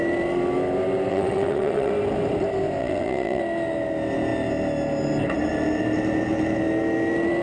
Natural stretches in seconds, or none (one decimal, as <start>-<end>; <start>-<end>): 0.0-1.1; 1.9-2.8; 3.4-7.4